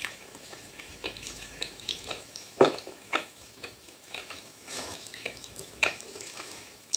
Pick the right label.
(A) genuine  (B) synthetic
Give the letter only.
B